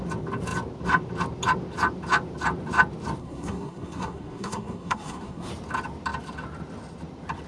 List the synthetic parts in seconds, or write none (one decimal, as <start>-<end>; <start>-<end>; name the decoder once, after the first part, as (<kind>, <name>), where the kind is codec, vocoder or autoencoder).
3.2-5.5 (codec, SNAC)